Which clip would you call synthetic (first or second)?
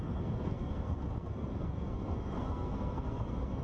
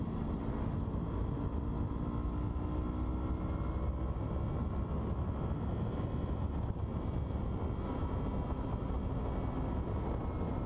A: first